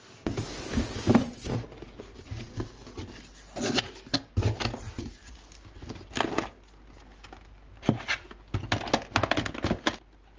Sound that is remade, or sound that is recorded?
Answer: recorded